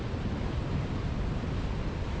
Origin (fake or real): real